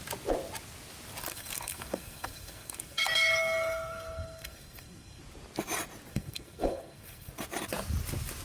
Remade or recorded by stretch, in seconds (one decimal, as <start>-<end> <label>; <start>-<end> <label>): 0.0-1.3 recorded; 1.3-5.2 remade; 5.2-6.1 recorded; 6.1-7.3 remade; 7.3-8.4 recorded